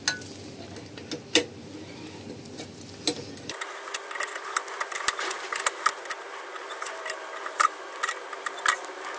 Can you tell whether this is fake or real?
real